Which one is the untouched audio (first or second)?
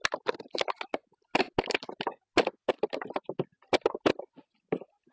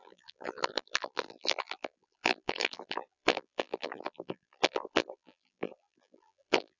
first